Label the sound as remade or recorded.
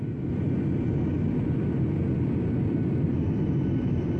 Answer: recorded